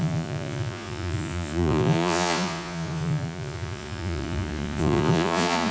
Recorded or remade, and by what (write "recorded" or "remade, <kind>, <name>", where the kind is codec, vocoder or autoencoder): remade, vocoder, Vocos